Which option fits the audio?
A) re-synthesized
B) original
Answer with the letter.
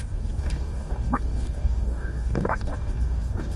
A